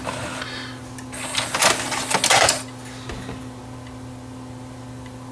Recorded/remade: recorded